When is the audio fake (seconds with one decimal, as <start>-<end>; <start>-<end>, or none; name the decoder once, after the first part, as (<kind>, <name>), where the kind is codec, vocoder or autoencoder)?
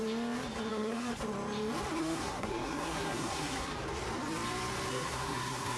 0.7-1.1 (codec, SNAC); 2.0-3.7; 4.9-5.8